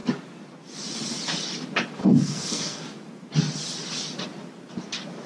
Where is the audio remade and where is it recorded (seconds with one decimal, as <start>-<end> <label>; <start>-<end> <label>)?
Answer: 0.0-2.0 recorded; 2.0-2.8 remade; 2.8-5.3 recorded